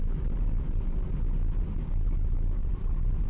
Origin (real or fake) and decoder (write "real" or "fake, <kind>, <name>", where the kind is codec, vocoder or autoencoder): real